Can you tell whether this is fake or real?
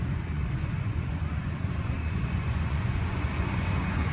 fake